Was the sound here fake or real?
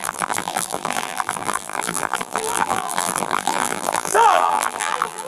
fake